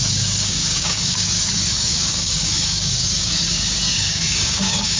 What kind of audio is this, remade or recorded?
remade